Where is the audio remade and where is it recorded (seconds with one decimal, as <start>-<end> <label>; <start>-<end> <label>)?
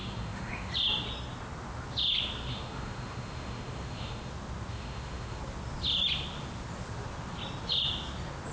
0.0-0.7 remade; 0.7-2.5 recorded; 2.5-4.3 remade; 4.3-4.7 recorded; 4.7-5.4 remade; 5.4-8.5 recorded